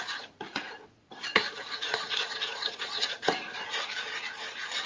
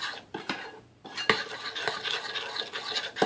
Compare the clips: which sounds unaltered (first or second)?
second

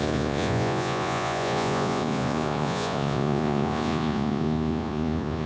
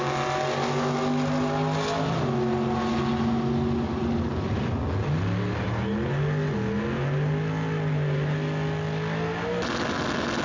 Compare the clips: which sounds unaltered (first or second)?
second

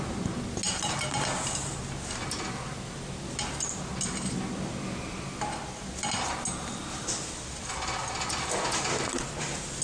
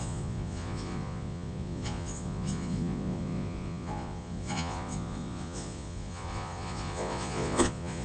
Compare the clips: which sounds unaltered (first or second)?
first